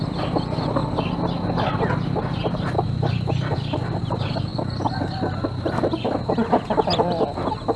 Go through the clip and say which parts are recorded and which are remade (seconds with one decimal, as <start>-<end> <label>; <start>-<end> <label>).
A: 0.0-0.8 remade; 0.8-2.2 recorded; 2.2-4.5 remade; 4.5-7.8 recorded